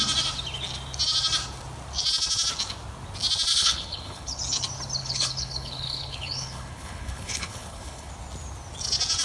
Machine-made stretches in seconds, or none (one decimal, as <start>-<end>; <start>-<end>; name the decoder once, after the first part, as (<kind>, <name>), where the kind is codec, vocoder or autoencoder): 3.5-4.4 (codec, HILCodec); 5.0-8.1